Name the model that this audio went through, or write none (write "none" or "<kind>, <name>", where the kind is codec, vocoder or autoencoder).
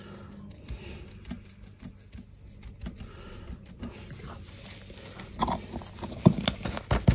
none